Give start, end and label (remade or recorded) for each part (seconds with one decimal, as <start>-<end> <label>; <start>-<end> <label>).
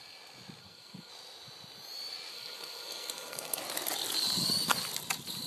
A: 0.0-0.6 recorded; 0.6-1.1 remade; 1.1-2.3 recorded; 2.3-3.6 remade; 3.6-5.5 recorded